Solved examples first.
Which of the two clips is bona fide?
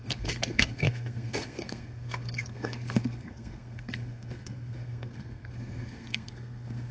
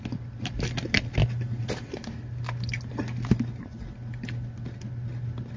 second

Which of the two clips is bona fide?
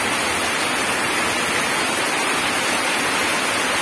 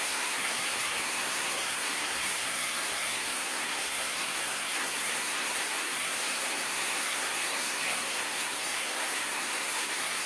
first